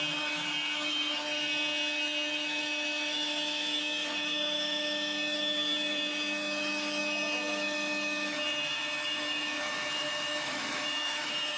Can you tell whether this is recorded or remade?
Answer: remade